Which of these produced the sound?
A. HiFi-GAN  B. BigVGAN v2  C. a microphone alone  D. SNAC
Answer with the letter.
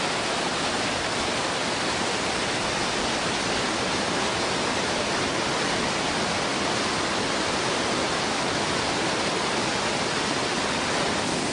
C